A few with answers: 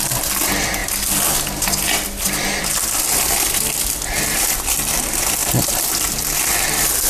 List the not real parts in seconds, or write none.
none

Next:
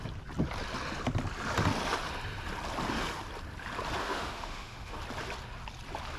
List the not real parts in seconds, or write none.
4.0-5.0 (autoencoder, DAC-VAE)

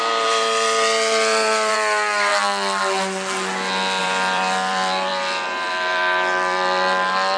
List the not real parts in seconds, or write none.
0.0-2.3 (vocoder, BigVGAN v2); 4.0-7.4

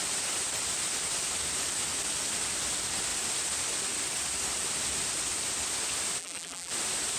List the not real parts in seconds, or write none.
6.2-6.7 (vocoder, BigVGAN v2)

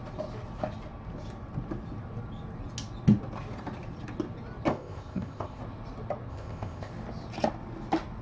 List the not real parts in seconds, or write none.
4.7-5.6 (codec, ZipCodec); 6.3-6.9